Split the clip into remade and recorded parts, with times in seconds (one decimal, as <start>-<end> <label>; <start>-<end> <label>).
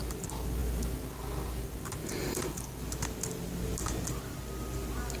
0.0-5.2 recorded